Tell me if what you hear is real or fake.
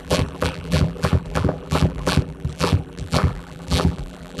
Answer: fake